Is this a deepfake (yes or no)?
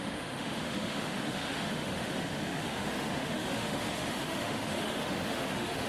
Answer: yes